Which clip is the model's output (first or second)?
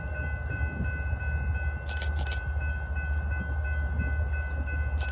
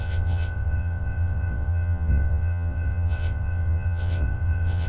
second